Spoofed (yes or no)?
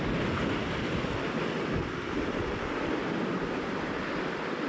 no